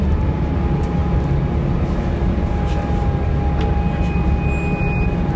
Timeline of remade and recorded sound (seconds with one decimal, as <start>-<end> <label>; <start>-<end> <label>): 0.0-5.4 recorded